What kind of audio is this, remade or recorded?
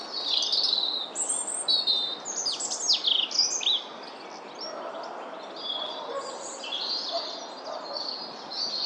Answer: recorded